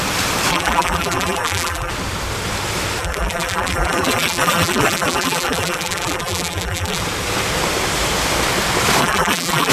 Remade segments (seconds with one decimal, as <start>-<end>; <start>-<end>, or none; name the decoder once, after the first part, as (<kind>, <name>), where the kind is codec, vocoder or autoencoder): 0.5-1.9 (vocoder, BigVGAN v2); 3.0-7.0; 9.0-9.7